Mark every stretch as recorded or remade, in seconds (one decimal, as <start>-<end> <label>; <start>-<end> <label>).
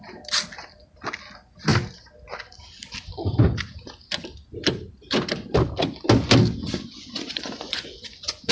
0.0-6.6 recorded; 6.6-8.5 remade